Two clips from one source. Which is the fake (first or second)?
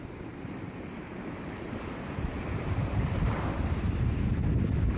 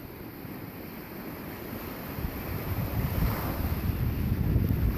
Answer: first